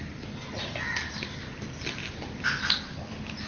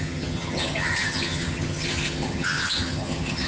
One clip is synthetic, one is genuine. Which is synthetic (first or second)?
second